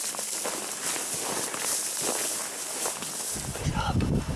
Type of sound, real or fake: real